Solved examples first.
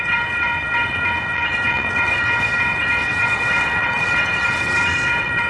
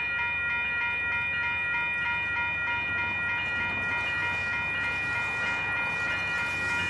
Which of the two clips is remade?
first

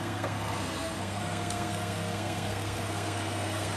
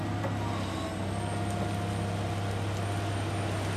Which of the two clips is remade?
first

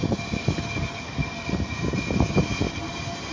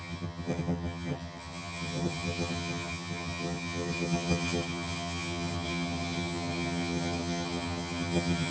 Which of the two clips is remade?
second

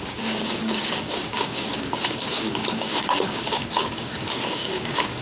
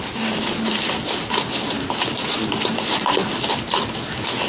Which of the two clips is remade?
first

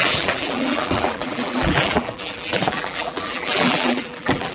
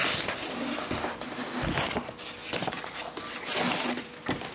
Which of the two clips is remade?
first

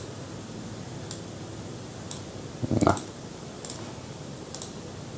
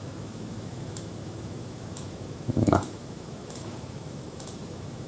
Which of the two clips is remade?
second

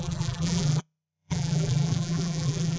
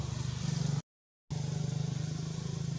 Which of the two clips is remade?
first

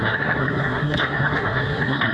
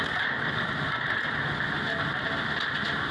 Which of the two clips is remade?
first